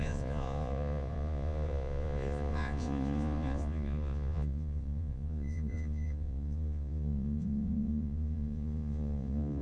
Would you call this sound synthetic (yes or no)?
yes